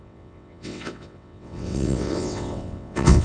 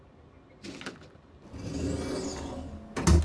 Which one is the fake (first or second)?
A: first